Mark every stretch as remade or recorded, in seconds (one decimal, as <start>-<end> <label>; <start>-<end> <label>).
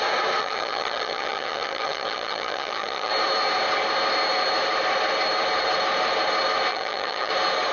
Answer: 0.0-0.4 recorded; 0.4-3.1 remade; 3.1-6.7 recorded; 6.7-7.3 remade; 7.3-7.7 recorded